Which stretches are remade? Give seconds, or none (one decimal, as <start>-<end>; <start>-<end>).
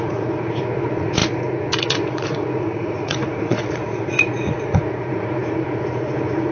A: 0.0-6.5